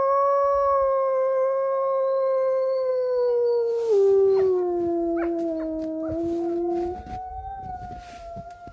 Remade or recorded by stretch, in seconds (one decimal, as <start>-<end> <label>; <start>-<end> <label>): 0.0-8.7 recorded